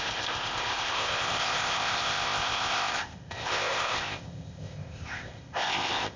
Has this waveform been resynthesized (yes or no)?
yes